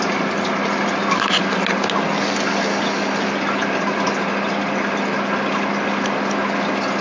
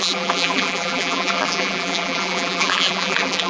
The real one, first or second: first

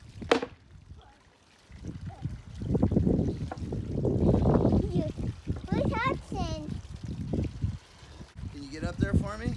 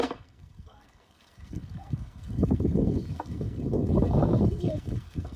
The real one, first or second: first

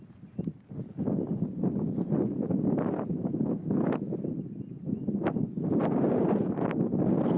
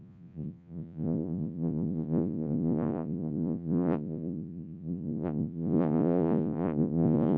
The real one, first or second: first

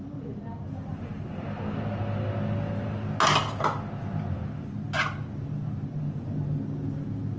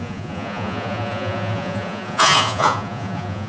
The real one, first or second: first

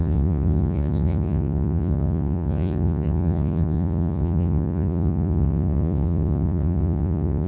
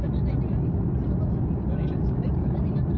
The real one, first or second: second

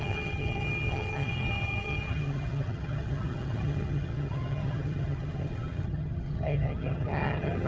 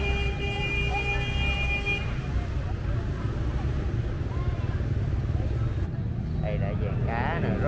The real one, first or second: second